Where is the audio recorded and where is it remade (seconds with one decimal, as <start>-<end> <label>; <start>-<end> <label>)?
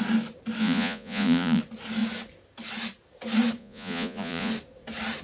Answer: 0.0-0.6 recorded; 0.6-1.6 remade; 1.6-3.6 recorded; 3.6-4.5 remade; 4.5-5.2 recorded